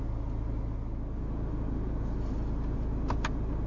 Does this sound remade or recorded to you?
recorded